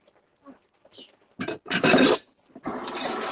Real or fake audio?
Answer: real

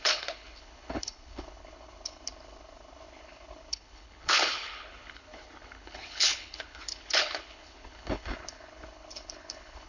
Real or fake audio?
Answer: fake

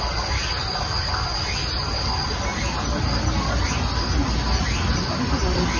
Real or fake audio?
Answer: real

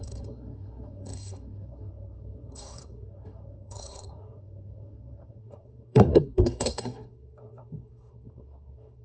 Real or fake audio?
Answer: fake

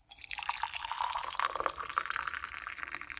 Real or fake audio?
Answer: fake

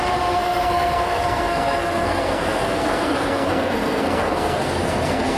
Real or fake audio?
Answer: fake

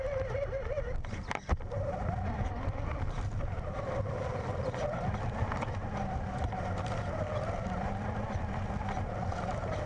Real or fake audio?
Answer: real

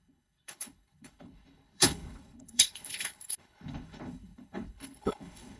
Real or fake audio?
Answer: fake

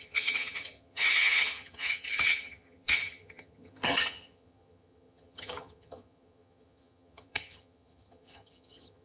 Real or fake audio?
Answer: fake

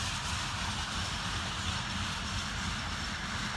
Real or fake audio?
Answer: real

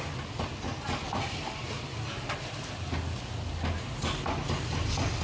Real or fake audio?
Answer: real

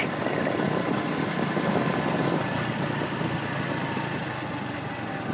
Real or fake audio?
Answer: real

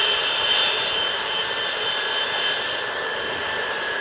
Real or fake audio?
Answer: fake